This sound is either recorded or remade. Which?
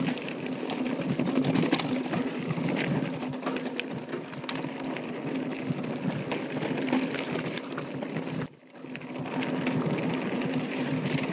recorded